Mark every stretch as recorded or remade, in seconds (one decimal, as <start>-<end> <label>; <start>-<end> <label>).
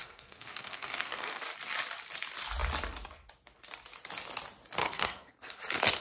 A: 0.0-1.4 remade; 1.4-4.8 recorded; 4.8-5.3 remade; 5.3-6.0 recorded